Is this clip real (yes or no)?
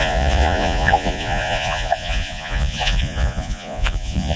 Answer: no